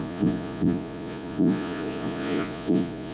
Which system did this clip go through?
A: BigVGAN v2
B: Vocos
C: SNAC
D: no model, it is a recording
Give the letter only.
B